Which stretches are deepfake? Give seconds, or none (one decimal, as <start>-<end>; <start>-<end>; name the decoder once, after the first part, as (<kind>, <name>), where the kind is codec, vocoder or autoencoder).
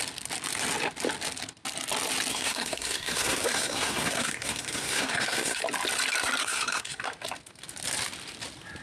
2.3-5.6 (codec, SNAC); 6.4-7.0